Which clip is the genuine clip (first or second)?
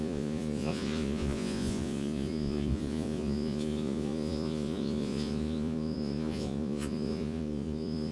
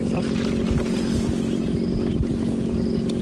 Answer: second